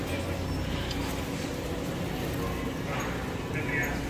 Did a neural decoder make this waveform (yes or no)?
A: no